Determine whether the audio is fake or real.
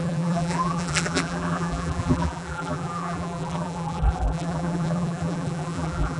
fake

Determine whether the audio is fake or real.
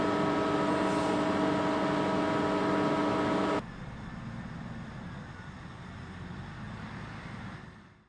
real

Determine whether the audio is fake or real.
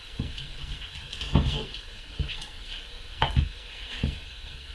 fake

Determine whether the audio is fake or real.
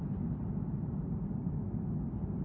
real